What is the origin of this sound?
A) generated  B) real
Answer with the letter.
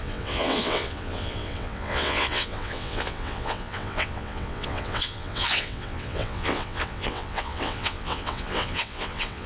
A